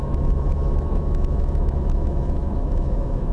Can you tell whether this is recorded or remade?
remade